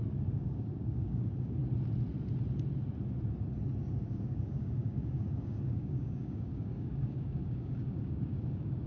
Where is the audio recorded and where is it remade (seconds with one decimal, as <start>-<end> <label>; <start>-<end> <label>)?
0.0-1.6 remade; 1.6-4.1 recorded; 4.1-8.9 remade